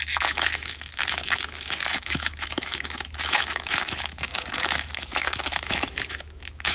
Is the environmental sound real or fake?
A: fake